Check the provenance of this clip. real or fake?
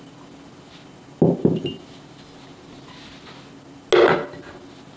real